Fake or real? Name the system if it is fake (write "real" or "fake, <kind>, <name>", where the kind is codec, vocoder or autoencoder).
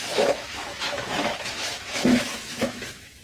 fake, autoencoder, DAC-VAE